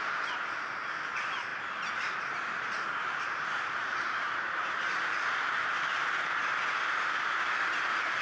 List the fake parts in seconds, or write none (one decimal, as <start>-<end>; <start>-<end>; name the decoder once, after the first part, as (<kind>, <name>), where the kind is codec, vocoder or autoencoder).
1.5-3.4 (vocoder, BigVGAN v2); 3.8-5.6